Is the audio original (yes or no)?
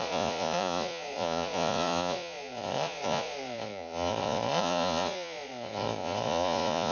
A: no